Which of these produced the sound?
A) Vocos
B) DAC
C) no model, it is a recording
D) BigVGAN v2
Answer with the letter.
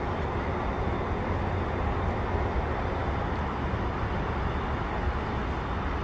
C